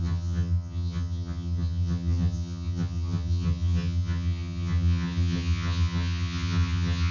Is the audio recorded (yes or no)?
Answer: no